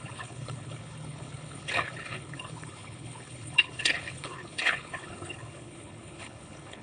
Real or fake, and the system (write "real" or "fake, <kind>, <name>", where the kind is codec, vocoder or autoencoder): fake, codec, HILCodec